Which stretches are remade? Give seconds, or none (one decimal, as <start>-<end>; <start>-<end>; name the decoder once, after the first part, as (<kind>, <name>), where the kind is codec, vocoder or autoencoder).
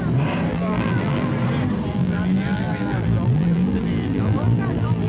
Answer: 0.5-1.3 (vocoder, BigVGAN v2); 1.9-5.1